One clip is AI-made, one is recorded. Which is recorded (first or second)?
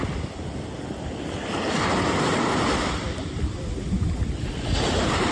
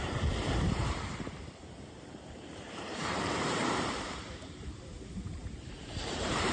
first